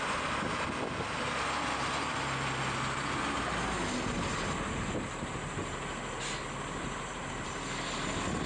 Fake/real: real